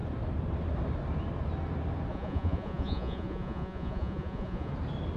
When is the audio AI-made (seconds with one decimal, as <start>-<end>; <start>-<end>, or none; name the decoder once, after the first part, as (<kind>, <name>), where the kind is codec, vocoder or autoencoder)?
2.1-4.7 (vocoder, Vocos)